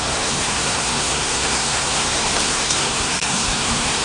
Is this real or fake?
fake